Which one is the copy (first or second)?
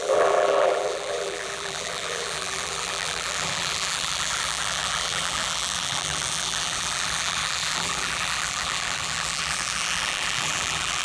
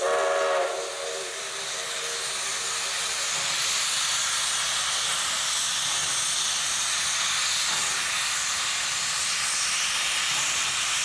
first